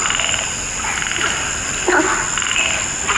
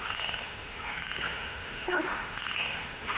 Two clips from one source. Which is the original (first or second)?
first